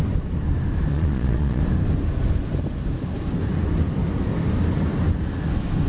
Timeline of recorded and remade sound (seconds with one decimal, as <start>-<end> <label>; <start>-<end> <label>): 0.0-0.9 recorded; 0.9-1.6 remade; 1.6-5.9 recorded